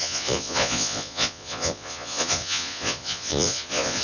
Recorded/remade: remade